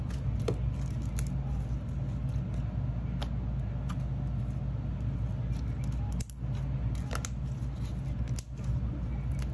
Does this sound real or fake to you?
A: real